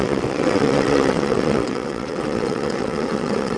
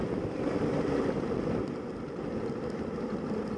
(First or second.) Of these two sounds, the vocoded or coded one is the first